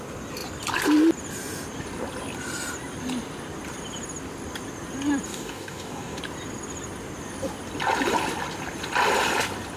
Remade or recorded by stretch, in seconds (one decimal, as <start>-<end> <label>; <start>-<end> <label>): 0.0-5.3 recorded; 5.3-6.2 remade; 6.2-9.8 recorded